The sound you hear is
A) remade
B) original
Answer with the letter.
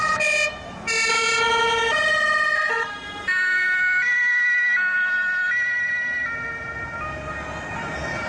B